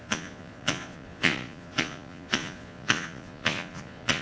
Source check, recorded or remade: remade